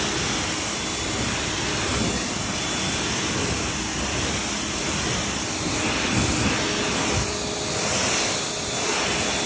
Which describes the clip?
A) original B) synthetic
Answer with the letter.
A